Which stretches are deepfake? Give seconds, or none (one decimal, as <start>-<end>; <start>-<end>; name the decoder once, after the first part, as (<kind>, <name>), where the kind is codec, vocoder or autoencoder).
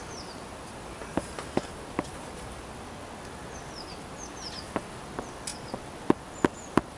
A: none